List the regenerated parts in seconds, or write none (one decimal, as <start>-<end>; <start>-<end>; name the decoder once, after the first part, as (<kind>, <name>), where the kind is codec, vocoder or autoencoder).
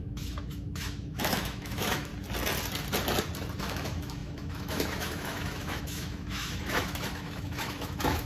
0.0-2.1 (autoencoder, DAC-VAE); 3.6-8.3